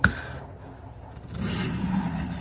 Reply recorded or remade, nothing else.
recorded